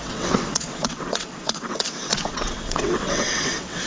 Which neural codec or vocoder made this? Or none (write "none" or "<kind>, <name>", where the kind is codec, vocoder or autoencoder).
vocoder, WaveNeXt